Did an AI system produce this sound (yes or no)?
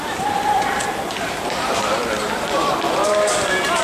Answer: yes